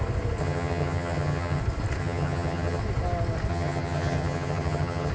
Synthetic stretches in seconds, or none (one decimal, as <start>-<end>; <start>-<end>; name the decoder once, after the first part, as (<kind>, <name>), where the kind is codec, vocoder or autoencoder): 0.4-1.6 (vocoder, HiFi-GAN); 2.0-2.8; 3.5-5.1